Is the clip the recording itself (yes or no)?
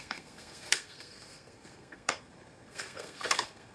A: no